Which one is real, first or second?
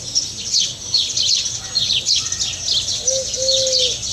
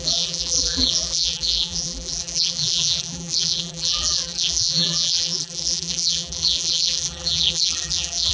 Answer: first